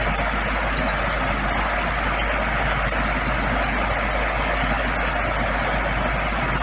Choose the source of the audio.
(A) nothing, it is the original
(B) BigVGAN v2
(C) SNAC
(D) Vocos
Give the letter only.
A